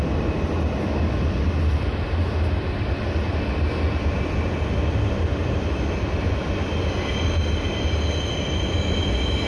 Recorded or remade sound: recorded